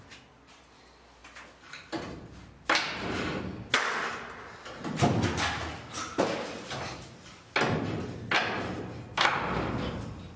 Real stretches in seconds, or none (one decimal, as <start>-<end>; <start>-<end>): 0.0-10.4